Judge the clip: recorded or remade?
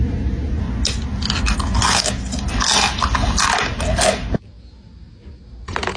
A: recorded